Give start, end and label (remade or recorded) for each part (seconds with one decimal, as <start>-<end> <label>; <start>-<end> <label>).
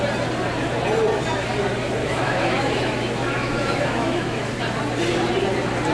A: 0.0-2.0 recorded; 2.0-4.5 remade; 4.5-5.9 recorded